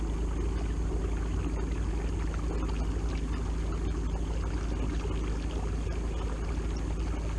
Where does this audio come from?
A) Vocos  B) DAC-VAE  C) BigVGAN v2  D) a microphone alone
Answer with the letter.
D